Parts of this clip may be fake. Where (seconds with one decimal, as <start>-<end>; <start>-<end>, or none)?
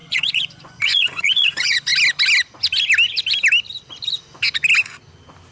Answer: 0.0-1.9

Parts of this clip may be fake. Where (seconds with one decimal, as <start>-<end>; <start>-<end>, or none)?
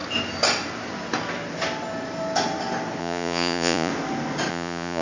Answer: 3.0-3.9; 4.5-5.0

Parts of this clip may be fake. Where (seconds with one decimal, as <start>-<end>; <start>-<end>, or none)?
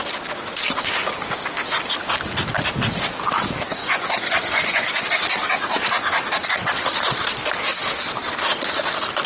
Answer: 3.8-5.0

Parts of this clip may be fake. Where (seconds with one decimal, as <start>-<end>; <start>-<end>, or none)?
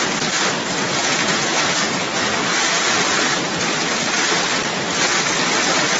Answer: 1.0-1.6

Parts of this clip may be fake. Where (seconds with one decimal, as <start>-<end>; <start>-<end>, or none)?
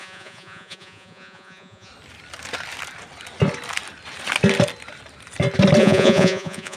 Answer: 0.0-1.9; 5.8-6.8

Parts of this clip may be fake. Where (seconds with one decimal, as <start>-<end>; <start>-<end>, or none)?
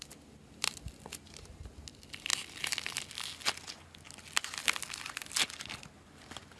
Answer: none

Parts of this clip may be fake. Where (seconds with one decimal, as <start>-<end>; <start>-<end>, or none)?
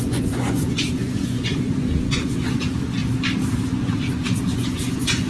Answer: 0.0-3.0; 3.6-5.3